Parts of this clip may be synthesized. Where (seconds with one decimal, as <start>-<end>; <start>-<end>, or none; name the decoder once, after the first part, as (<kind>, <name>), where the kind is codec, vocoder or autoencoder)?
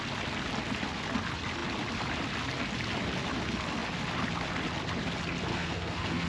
5.5-6.3 (codec, SNAC)